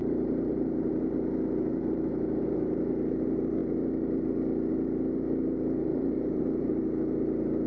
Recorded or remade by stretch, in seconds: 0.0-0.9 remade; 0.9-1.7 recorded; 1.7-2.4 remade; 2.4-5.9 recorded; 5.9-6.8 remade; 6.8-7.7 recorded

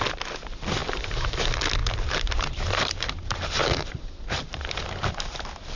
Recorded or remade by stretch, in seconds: 0.0-1.8 recorded; 1.8-4.8 remade; 4.8-5.8 recorded

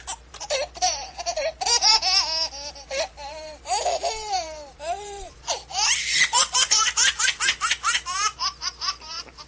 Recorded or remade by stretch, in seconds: 0.0-1.9 remade; 1.9-2.7 recorded; 2.7-9.5 remade

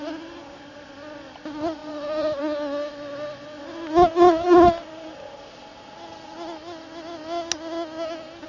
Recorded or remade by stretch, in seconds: 0.0-1.8 recorded; 1.8-2.4 remade; 2.4-8.5 recorded

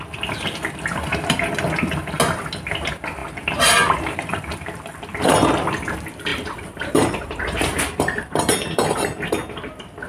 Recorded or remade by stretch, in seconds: 0.0-6.3 recorded; 6.3-9.3 remade; 9.3-10.1 recorded

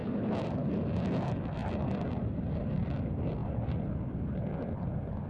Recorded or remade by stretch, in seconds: 0.0-0.7 remade; 0.7-1.6 recorded; 1.6-2.7 remade; 2.7-3.4 recorded; 3.4-4.3 remade; 4.3-5.3 recorded

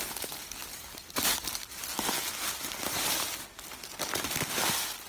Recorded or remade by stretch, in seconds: 0.0-0.6 recorded; 0.6-1.3 remade; 1.3-5.1 recorded

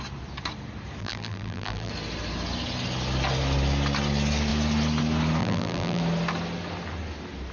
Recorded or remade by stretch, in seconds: 0.0-1.0 recorded; 1.0-1.9 remade; 1.9-5.4 recorded; 5.4-6.0 remade; 6.0-7.5 recorded